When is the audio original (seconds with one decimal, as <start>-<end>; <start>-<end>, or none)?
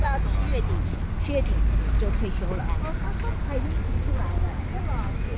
0.0-5.4